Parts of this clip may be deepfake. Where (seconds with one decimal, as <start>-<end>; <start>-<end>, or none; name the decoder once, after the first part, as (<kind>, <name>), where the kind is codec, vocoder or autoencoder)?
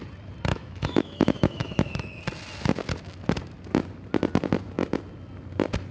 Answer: 0.5-2.2 (autoencoder, DAC-VAE)